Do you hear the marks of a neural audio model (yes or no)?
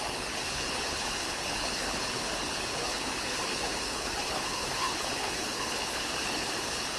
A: yes